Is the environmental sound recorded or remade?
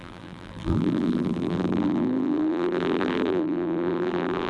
remade